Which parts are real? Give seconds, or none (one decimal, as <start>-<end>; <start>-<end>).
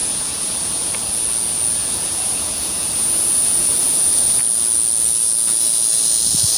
0.9-1.8; 4.4-6.6